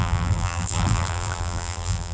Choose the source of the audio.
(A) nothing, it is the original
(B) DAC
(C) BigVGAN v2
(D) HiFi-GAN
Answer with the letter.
C